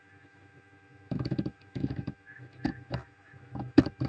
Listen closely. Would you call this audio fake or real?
fake